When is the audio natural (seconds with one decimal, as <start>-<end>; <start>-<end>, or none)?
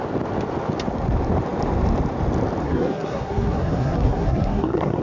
0.0-2.6